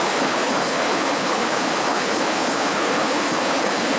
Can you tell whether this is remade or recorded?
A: remade